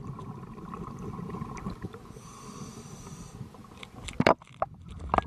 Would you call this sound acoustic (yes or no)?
no